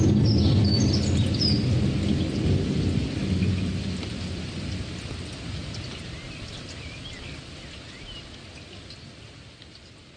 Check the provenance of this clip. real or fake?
real